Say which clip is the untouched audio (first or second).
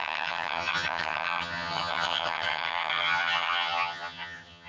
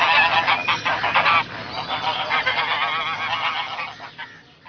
second